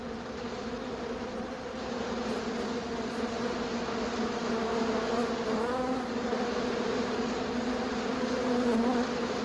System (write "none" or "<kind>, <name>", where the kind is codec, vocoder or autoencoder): none